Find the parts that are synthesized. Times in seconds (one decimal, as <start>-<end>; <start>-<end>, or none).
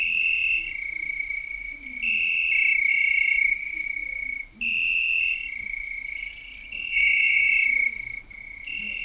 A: 6.9-7.5